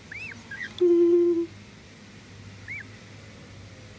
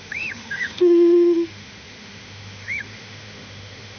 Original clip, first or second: first